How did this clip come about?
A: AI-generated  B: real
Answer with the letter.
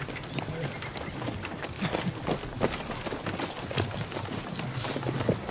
B